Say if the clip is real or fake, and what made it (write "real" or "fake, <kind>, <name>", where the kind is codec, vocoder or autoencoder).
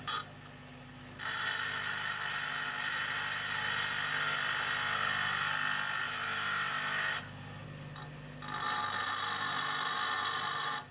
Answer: real